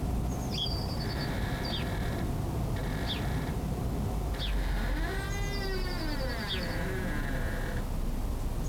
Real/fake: real